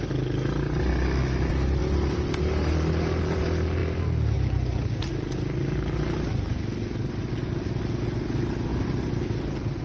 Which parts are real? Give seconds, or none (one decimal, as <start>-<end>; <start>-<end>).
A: 0.0-9.8